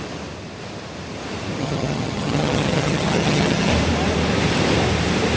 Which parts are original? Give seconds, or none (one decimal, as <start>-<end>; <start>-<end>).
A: 0.0-1.6; 3.7-5.4

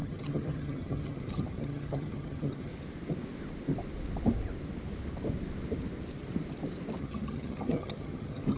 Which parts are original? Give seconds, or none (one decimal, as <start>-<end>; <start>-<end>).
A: 2.7-7.0